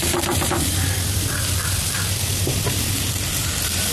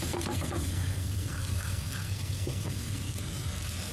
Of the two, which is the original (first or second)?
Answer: first